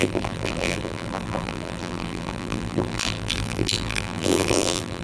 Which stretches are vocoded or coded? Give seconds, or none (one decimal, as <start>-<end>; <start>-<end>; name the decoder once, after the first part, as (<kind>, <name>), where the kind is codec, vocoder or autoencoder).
0.0-5.0 (vocoder, BigVGAN v2)